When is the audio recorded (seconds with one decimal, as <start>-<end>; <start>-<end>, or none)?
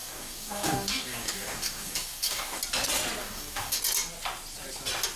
2.6-3.2; 3.8-5.2